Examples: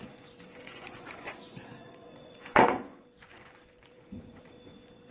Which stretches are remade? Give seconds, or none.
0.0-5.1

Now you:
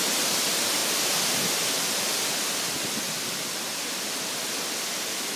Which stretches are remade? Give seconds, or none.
none

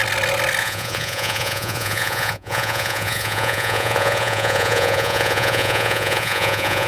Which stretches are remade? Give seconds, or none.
0.6-6.9

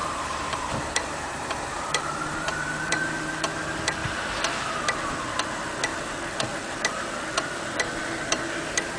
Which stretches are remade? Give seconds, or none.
0.0-3.3

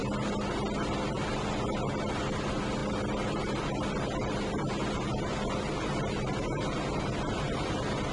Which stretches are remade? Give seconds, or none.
none

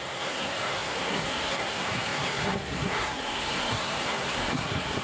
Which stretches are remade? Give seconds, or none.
0.0-5.0

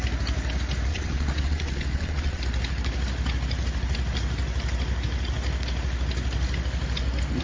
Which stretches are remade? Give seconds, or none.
0.9-2.4

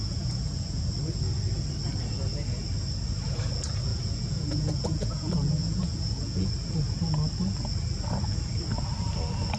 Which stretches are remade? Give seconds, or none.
0.0-0.8; 3.9-6.5